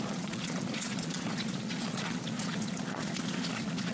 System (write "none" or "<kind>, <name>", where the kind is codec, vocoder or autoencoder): vocoder, Vocos